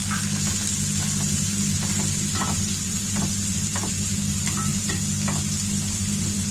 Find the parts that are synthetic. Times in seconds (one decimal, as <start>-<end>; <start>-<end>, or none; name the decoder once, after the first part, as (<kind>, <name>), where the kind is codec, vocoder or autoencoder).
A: none